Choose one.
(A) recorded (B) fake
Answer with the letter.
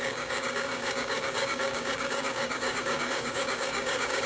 B